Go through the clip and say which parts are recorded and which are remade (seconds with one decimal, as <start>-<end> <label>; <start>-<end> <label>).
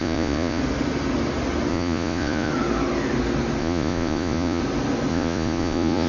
0.0-0.6 remade; 0.6-1.7 recorded; 1.7-2.5 remade; 2.5-3.6 recorded; 3.6-4.6 remade; 4.6-5.1 recorded; 5.1-6.1 remade